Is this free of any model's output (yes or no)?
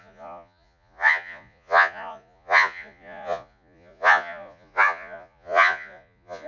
no